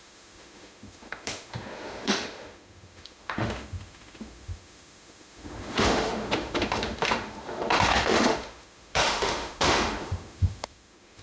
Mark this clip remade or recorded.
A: remade